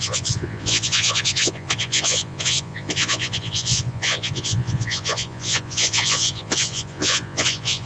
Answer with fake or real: fake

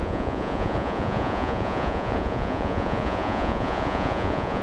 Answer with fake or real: fake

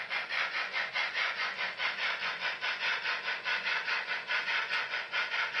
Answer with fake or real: fake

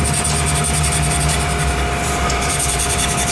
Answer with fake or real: real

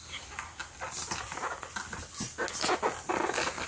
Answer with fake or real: real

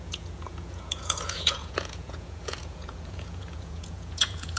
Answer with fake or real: fake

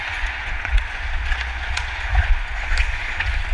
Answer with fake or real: fake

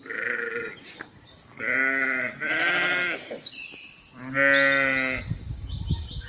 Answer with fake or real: real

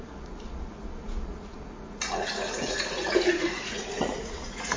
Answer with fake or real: fake